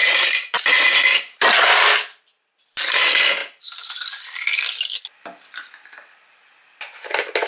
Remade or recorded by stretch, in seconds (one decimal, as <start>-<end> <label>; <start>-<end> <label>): 0.0-1.4 remade; 1.4-7.5 recorded